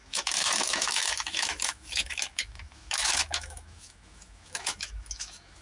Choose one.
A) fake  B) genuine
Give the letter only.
A